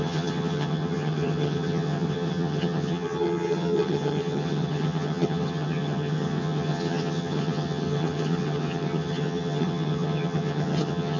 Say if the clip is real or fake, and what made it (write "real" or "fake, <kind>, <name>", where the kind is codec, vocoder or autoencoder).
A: fake, vocoder, HiFi-GAN